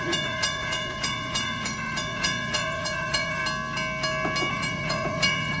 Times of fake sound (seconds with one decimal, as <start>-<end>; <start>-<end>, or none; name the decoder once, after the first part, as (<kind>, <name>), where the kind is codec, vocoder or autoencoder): 0.0-3.4 (vocoder, Vocos); 4.5-5.6